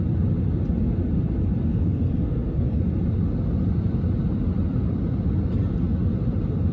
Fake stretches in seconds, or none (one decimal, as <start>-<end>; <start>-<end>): 1.7-2.8